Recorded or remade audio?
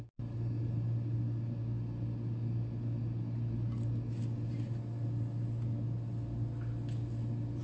recorded